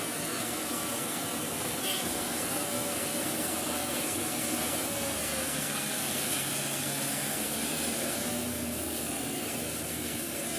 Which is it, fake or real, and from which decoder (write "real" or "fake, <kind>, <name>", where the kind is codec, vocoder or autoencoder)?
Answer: fake, codec, SNAC